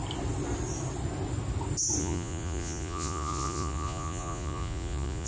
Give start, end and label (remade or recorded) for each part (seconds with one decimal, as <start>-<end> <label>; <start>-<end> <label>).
0.0-2.0 recorded; 2.0-5.3 remade